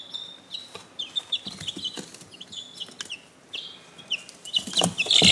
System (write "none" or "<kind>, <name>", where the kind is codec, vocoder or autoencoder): none